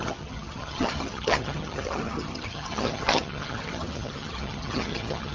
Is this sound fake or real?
fake